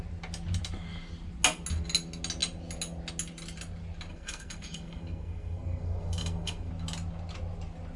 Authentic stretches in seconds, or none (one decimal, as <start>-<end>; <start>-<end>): 0.0-4.1; 6.7-8.0